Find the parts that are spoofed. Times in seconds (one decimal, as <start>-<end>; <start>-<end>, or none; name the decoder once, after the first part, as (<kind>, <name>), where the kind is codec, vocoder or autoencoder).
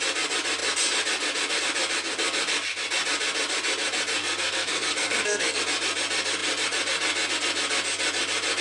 4.2-5.6 (codec, SNAC)